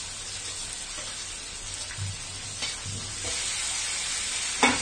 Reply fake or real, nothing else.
real